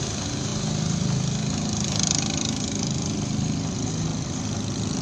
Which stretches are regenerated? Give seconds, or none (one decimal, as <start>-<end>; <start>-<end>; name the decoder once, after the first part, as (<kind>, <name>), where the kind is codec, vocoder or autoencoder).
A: none